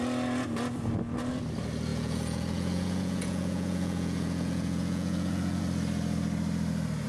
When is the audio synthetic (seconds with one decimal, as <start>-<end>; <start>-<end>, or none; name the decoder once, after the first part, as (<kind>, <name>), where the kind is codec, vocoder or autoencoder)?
1.9-5.6 (vocoder, Vocos)